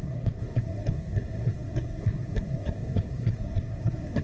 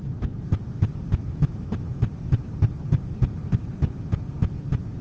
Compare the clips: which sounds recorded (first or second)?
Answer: second